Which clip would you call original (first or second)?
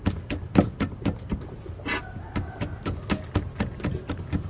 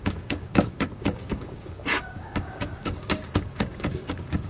first